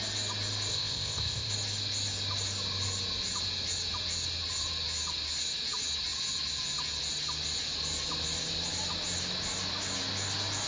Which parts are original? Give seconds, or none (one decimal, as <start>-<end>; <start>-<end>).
0.0-0.7; 1.5-10.7